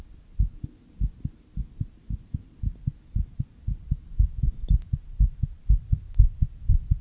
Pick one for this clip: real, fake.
real